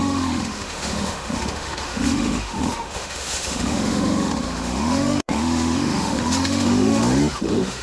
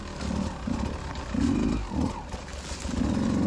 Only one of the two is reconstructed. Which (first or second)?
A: first